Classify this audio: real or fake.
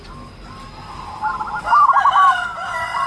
real